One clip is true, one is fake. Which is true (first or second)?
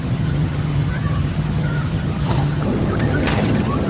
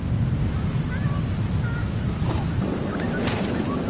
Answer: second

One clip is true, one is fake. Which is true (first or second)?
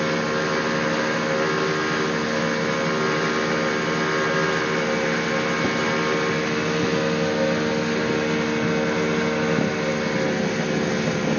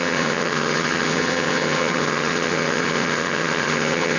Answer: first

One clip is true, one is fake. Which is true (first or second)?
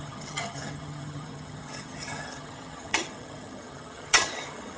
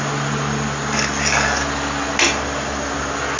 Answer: second